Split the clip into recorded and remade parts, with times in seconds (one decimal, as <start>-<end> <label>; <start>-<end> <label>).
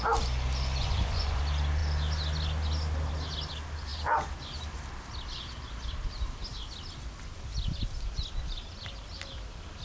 0.0-0.8 recorded; 0.8-1.4 remade; 1.4-9.8 recorded